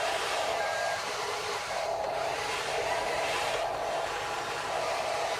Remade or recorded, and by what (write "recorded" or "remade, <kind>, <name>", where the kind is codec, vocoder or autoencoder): remade, vocoder, BigVGAN v2